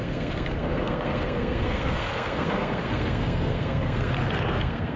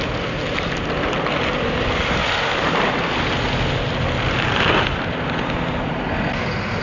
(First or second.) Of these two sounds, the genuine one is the second